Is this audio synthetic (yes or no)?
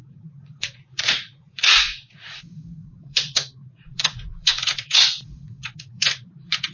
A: yes